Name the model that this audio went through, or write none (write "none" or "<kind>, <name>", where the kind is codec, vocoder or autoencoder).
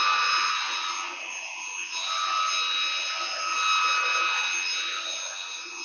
none